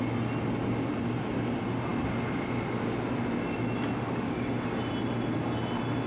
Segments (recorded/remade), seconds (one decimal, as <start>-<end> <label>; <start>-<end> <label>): 0.0-6.1 recorded